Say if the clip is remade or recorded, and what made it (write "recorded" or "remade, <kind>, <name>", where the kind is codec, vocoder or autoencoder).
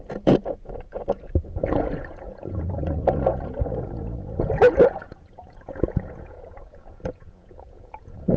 remade, vocoder, Vocos